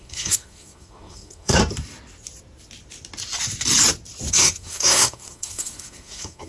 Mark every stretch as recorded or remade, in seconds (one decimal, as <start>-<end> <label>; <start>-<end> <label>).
0.0-1.6 remade; 1.6-4.3 recorded; 4.3-6.5 remade